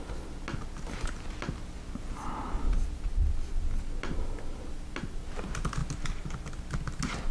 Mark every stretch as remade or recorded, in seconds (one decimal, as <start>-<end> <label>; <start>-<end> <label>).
0.0-7.3 recorded